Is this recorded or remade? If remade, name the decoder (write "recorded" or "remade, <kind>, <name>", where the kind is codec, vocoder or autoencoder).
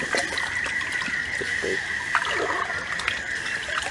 recorded